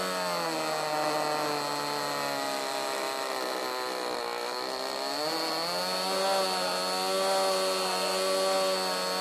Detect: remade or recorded recorded